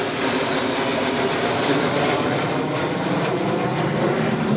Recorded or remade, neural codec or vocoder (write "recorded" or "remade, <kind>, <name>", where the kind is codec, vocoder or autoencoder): recorded